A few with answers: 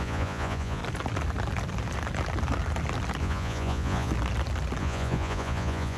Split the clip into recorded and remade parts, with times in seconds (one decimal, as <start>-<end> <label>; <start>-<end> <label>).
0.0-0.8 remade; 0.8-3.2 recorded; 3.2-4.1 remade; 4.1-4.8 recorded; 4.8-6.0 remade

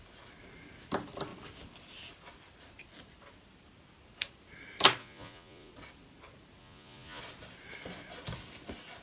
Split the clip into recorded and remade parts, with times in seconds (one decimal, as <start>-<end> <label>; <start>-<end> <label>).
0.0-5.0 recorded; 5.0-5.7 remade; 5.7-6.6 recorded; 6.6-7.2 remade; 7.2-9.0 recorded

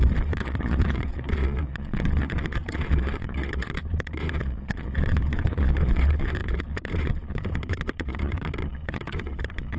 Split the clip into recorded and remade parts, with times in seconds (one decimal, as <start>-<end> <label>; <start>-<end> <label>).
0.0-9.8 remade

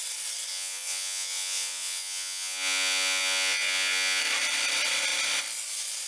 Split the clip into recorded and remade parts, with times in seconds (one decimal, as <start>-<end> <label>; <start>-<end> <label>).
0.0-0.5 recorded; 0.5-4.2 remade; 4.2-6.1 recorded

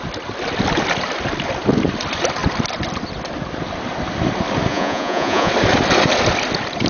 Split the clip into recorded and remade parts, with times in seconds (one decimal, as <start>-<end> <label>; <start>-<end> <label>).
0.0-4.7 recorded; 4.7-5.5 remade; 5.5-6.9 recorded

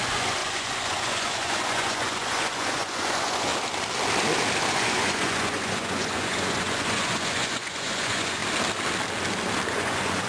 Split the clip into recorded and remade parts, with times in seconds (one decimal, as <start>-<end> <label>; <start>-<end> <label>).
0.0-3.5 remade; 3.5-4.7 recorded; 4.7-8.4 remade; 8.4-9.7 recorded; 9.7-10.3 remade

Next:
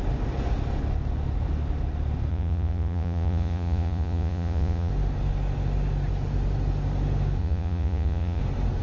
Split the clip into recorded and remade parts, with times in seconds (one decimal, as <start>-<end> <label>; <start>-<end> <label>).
0.0-2.3 recorded; 2.3-4.9 remade; 4.9-7.4 recorded; 7.4-8.4 remade; 8.4-8.8 recorded